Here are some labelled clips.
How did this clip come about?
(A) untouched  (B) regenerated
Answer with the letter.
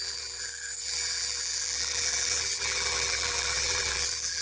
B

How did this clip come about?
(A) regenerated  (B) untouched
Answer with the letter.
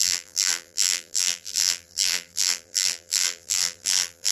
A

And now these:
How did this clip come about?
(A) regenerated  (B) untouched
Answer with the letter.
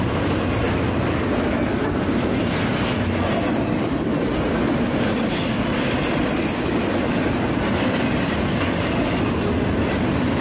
B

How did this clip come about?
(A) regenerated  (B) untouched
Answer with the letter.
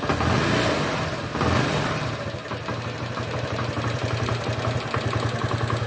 B